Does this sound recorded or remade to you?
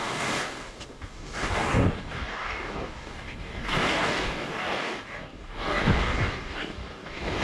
remade